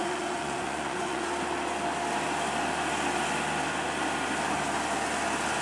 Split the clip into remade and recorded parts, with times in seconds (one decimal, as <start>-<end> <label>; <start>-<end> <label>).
0.0-1.3 remade; 1.3-5.6 recorded